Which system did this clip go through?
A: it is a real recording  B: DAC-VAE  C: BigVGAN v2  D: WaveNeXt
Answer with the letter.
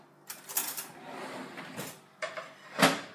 A